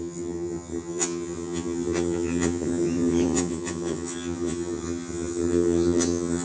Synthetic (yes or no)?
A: yes